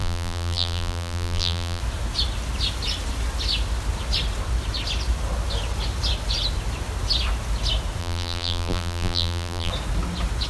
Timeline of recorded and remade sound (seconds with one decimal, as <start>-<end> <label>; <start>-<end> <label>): 0.0-1.8 remade; 1.8-8.0 recorded; 8.0-9.7 remade; 9.7-10.5 recorded